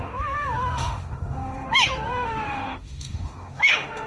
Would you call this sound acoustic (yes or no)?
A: no